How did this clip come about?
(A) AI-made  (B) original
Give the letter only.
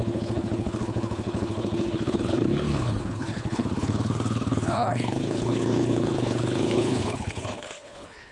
A